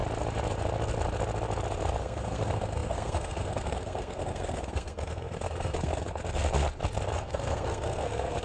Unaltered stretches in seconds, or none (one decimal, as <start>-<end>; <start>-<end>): 0.0-2.0; 6.2-7.2

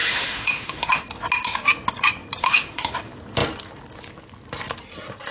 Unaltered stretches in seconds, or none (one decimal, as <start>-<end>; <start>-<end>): 1.0-2.4; 2.9-5.3

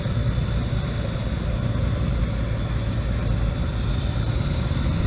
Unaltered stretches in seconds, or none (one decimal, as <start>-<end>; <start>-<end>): 0.0-5.1

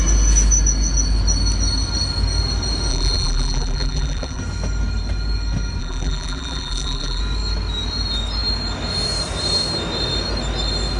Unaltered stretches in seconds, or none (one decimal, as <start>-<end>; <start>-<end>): 0.0-2.9; 4.4-5.8; 7.2-11.0

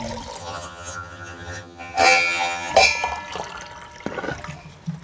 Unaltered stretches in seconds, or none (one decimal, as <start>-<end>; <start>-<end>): 0.0-0.4; 2.7-5.0

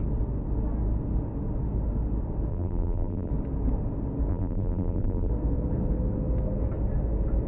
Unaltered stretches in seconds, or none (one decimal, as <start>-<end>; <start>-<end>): 0.0-2.5; 3.3-4.3; 5.3-7.5

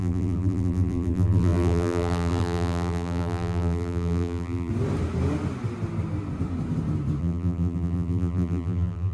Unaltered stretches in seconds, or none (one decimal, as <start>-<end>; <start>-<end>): 4.7-7.2